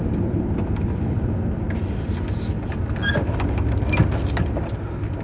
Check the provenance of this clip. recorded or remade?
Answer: recorded